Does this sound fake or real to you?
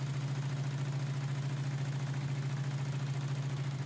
real